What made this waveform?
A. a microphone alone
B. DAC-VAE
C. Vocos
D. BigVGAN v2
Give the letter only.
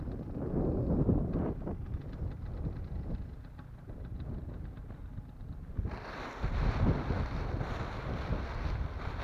A